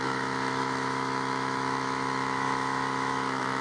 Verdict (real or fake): fake